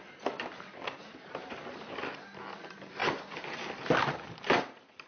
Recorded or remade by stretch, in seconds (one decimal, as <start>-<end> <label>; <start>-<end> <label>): 0.0-3.0 remade; 3.0-5.1 recorded